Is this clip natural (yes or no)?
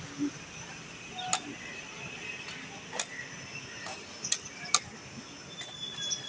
yes